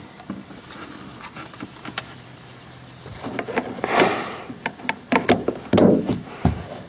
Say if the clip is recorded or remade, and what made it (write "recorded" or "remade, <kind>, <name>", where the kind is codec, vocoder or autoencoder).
recorded